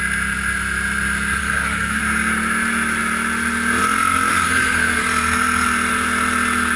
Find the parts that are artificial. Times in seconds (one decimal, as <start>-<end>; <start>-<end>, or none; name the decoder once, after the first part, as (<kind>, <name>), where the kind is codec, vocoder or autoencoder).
1.4-2.0 (codec, SNAC); 4.3-5.0